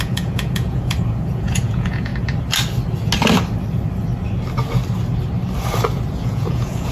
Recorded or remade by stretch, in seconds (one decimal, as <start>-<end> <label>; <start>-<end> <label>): 0.0-2.1 remade; 2.1-6.1 recorded; 6.1-6.9 remade